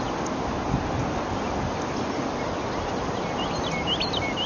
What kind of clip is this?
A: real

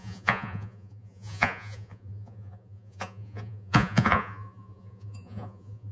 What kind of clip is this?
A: fake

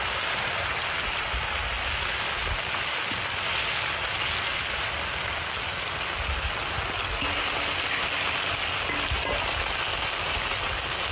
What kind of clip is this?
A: real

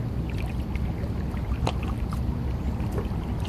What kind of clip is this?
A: real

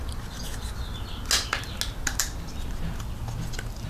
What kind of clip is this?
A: real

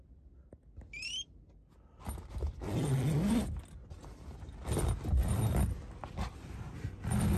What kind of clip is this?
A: real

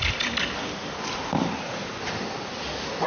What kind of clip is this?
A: real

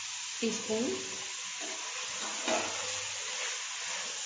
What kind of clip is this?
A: real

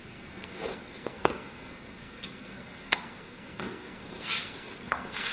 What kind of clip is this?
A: fake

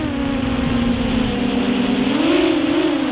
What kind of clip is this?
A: real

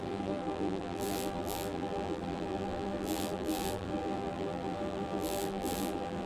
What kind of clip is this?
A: fake